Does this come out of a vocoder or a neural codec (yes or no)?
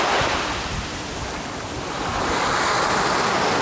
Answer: no